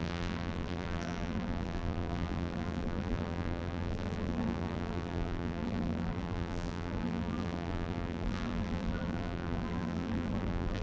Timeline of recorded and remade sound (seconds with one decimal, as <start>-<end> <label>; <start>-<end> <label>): 0.0-10.8 remade